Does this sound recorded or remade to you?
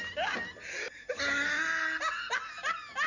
recorded